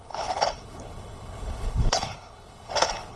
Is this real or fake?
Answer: fake